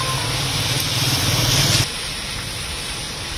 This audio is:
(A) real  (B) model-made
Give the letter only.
B